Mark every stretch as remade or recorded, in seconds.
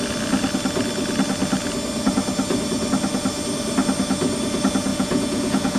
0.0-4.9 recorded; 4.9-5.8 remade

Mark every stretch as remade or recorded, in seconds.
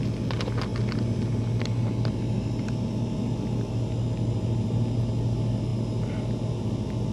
0.0-7.1 recorded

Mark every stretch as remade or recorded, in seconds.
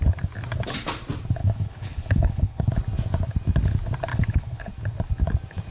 0.0-1.4 recorded; 1.4-2.7 remade; 2.7-4.1 recorded; 4.1-4.7 remade; 4.7-5.7 recorded